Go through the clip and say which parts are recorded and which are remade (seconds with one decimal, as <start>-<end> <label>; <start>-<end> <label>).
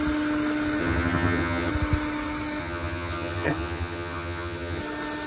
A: 0.0-0.8 recorded; 0.8-1.7 remade; 1.7-2.6 recorded; 2.6-4.8 remade; 4.8-5.3 recorded